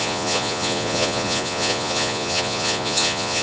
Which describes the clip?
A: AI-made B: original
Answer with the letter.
A